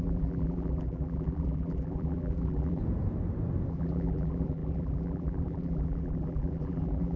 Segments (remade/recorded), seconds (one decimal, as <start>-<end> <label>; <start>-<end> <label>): 0.0-2.8 remade; 2.8-3.7 recorded; 3.7-7.2 remade